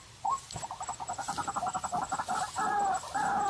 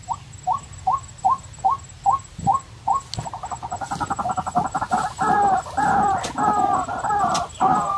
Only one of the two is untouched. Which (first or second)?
second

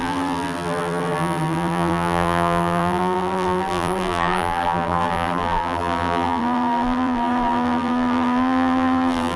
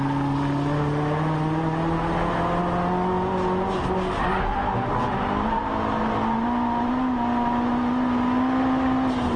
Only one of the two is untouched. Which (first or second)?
second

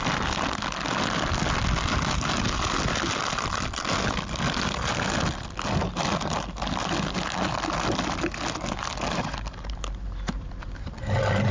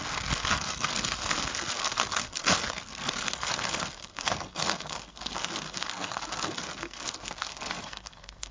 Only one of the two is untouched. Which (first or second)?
first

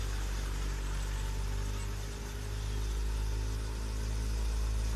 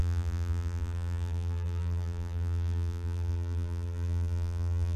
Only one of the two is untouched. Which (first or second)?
first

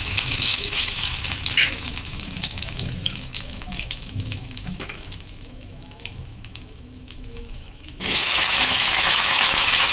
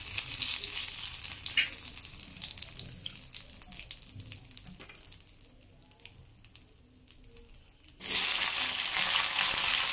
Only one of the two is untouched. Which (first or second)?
second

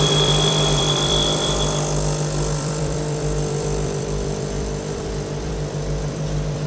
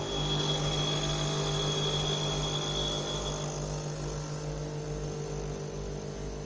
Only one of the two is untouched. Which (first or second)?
second